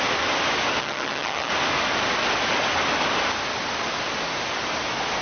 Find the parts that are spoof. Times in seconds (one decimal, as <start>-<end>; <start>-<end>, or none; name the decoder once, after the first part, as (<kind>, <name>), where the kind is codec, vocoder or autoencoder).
0.8-1.5 (vocoder, HiFi-GAN)